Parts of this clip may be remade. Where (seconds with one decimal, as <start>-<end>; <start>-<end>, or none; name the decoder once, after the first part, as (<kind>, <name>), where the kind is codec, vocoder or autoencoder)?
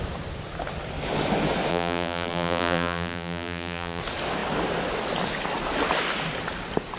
1.7-4.0 (vocoder, BigVGAN v2)